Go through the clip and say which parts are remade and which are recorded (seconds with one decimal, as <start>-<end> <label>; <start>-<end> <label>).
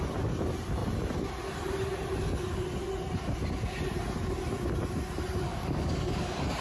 0.0-5.5 recorded; 5.5-6.6 remade